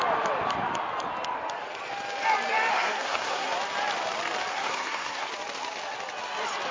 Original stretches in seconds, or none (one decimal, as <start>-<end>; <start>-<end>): 0.0-2.7; 3.5-4.5; 5.3-6.7